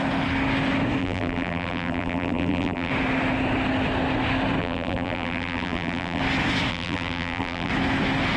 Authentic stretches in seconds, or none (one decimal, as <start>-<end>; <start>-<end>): 0.0-1.0; 2.9-4.6; 6.2-6.7; 7.7-8.4